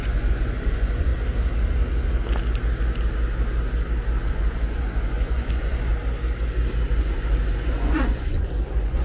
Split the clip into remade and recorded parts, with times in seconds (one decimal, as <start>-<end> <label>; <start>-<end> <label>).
0.0-1.1 remade; 1.1-4.3 recorded; 4.3-5.9 remade; 5.9-6.9 recorded; 6.9-9.0 remade